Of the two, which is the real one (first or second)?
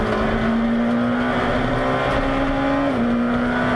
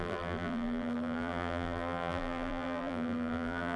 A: first